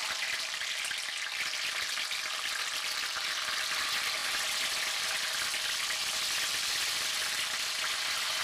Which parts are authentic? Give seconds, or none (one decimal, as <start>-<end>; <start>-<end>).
0.0-8.4